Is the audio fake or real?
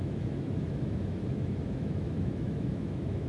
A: fake